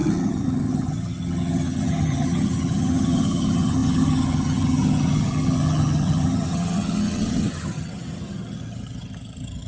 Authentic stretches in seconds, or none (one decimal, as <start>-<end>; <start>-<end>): none